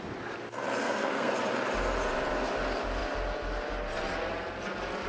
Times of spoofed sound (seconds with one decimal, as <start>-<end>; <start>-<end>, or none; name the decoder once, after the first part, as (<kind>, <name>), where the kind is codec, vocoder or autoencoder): 0.8-1.3 (codec, SNAC)